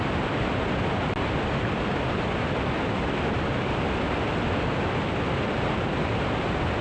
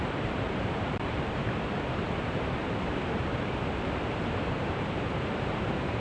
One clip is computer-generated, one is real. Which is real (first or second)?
first